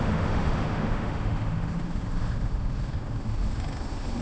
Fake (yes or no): yes